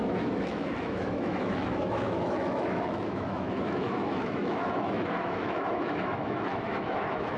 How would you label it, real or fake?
fake